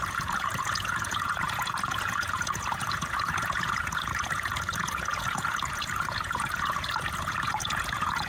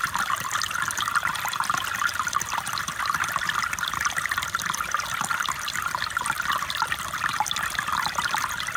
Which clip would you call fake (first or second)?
first